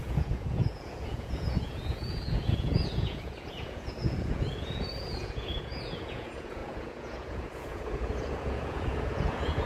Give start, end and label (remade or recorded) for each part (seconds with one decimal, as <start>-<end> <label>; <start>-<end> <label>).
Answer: 0.0-9.7 remade